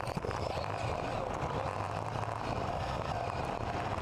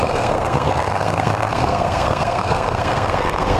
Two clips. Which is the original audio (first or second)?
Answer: first